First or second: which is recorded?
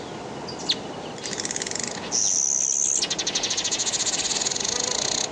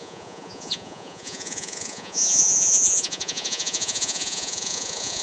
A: first